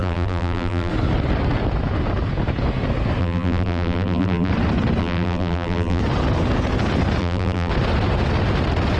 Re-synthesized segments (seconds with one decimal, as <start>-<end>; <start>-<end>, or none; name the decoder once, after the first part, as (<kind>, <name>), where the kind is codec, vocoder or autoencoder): 0.0-0.9 (vocoder, BigVGAN v2); 3.2-4.5; 5.0-6.0; 7.2-7.7